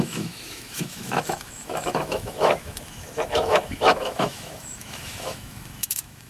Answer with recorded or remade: remade